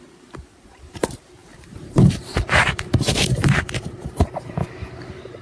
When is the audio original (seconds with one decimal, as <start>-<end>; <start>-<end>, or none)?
none